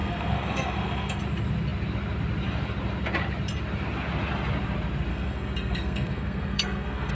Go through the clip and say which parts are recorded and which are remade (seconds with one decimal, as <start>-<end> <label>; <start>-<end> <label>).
0.0-1.2 remade; 1.2-5.1 recorded; 5.1-7.1 remade